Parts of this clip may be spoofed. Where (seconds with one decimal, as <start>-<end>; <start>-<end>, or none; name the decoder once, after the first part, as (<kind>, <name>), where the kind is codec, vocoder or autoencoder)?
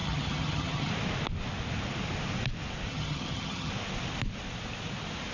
0.0-0.9 (vocoder, HiFi-GAN); 2.9-3.7